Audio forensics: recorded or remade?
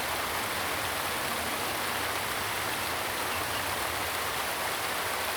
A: recorded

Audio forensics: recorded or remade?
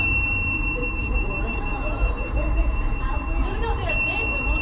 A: remade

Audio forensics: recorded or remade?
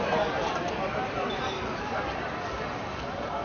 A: remade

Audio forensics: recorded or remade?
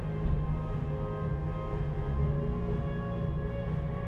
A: recorded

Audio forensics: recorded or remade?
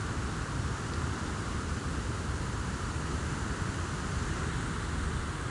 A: recorded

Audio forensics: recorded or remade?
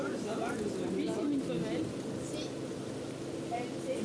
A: recorded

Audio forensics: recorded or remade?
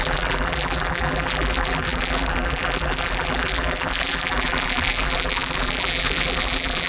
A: remade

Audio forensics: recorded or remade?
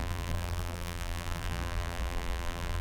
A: remade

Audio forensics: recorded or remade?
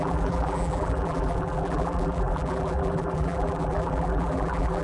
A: remade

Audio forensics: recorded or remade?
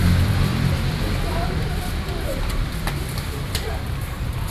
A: remade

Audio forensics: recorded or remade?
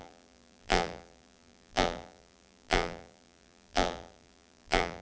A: remade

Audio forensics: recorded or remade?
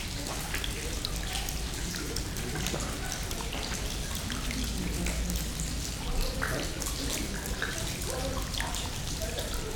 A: recorded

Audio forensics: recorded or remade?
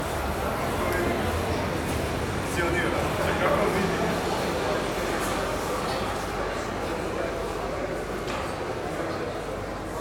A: recorded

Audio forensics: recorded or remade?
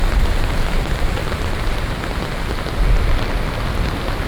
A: recorded